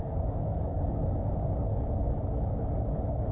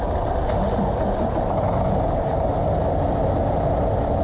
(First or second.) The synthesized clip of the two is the first